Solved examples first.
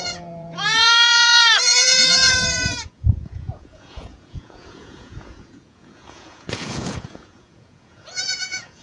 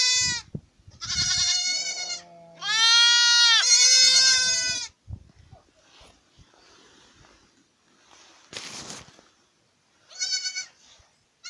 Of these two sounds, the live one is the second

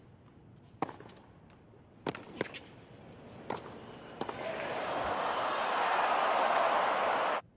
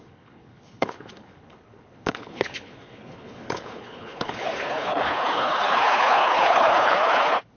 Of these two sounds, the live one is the first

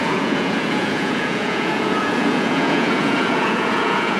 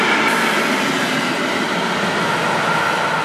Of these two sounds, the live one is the second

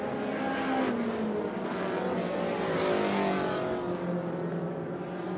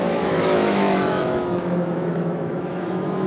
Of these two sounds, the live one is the first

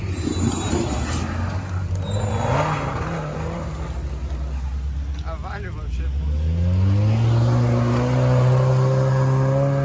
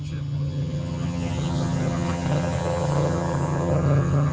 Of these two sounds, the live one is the first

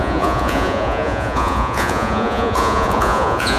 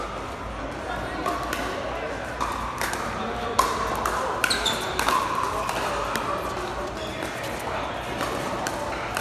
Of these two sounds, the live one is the second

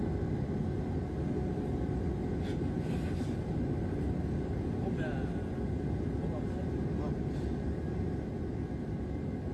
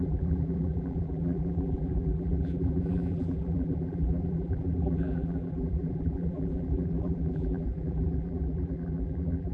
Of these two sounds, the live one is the first